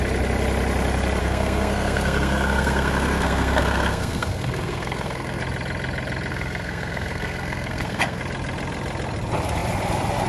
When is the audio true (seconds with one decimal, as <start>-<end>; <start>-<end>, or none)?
0.0-1.2; 5.4-6.3; 8.2-10.3